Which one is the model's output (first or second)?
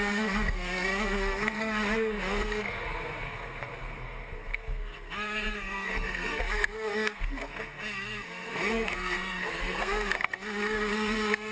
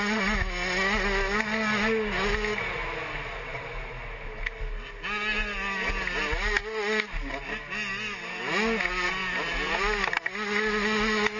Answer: first